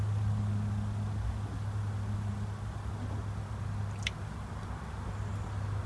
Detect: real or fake real